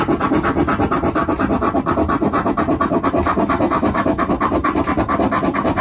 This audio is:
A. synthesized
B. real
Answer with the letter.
B